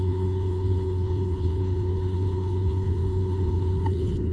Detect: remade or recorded remade